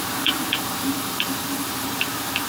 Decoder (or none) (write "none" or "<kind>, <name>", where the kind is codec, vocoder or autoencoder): vocoder, BigVGAN v2